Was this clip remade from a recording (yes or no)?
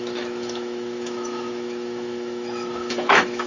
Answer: yes